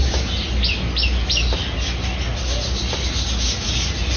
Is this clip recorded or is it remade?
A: recorded